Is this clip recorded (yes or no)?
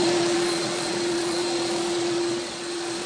no